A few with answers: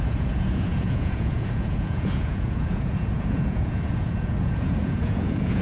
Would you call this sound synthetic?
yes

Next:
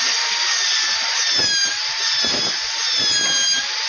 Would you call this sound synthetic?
no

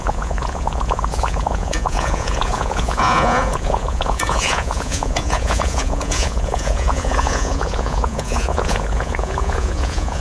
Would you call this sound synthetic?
yes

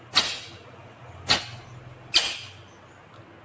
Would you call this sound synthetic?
no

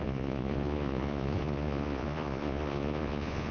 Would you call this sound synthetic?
yes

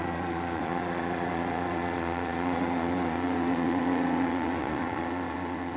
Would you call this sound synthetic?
yes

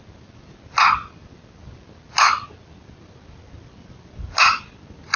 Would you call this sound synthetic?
no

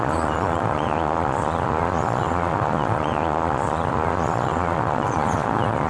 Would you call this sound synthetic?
yes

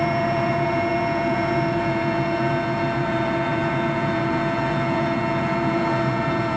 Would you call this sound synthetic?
yes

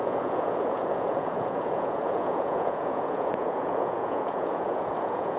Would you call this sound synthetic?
yes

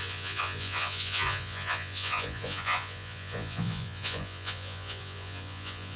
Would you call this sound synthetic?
yes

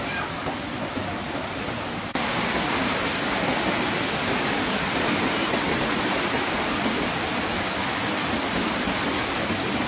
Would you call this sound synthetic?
no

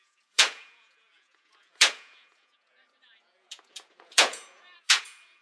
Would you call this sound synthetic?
yes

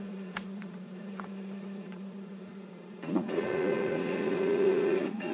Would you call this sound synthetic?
yes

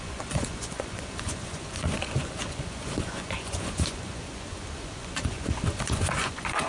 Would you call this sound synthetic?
yes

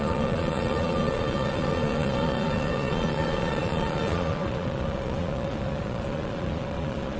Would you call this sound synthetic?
yes